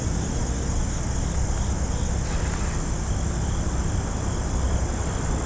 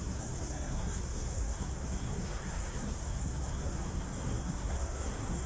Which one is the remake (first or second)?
second